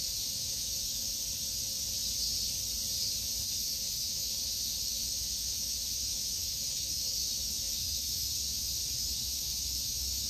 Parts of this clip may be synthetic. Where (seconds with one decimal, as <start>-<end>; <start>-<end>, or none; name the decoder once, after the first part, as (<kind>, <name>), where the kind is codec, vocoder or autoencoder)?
0.0-1.1 (autoencoder, DAC-VAE); 3.4-10.3